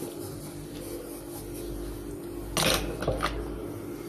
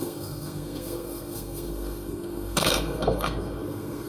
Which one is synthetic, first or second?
second